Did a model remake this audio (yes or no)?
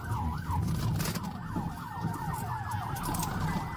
no